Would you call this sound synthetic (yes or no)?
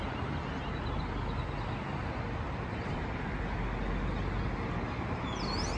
no